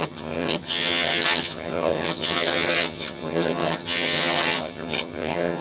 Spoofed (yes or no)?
yes